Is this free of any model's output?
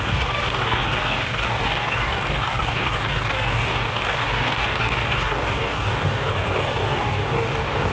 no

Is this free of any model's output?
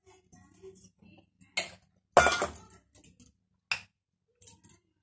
yes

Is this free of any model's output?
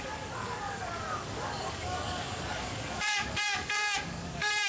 no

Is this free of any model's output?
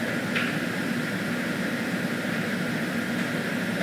yes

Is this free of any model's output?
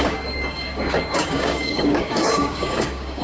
no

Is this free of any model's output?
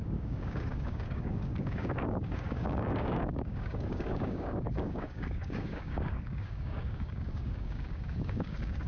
no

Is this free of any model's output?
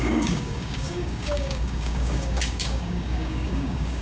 no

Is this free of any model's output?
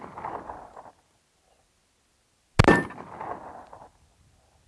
yes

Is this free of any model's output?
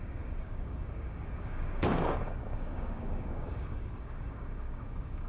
no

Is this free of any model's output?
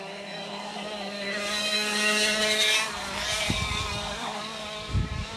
no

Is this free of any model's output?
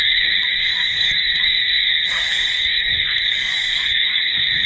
no